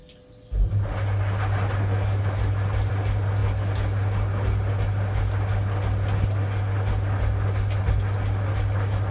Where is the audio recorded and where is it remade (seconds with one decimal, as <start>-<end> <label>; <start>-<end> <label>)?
0.0-9.1 recorded